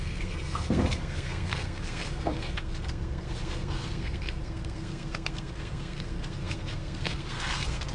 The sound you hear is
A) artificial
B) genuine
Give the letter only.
A